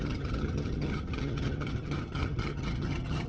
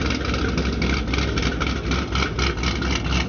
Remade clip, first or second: first